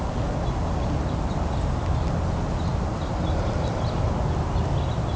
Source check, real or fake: real